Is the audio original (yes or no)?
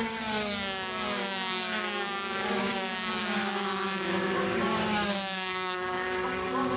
no